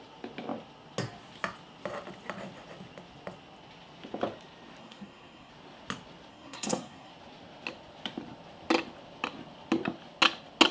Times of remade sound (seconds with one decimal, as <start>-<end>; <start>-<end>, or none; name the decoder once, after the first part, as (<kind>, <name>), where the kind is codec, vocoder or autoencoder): 4.8-5.5 (codec, SNAC); 6.3-7.1